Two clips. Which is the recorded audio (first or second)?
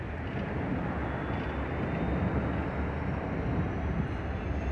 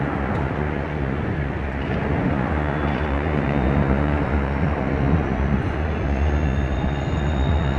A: first